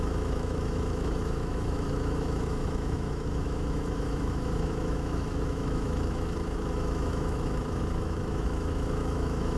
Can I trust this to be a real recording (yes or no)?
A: no